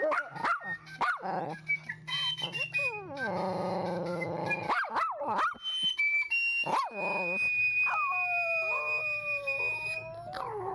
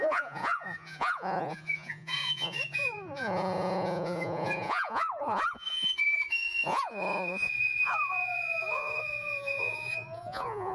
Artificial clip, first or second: second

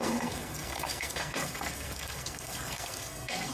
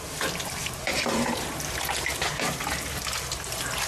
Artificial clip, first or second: first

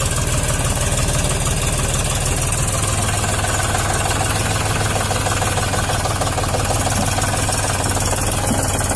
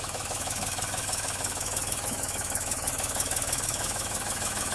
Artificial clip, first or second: second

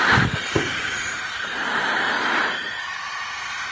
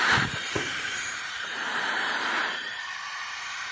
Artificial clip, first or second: second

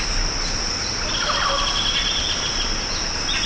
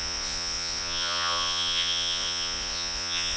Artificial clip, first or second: second